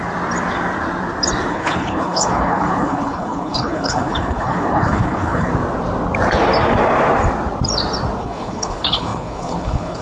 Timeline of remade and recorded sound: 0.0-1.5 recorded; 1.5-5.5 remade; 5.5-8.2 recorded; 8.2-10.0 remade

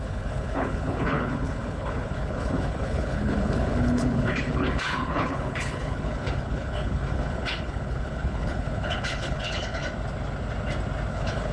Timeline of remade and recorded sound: 0.0-9.8 remade; 9.8-11.1 recorded; 11.1-11.5 remade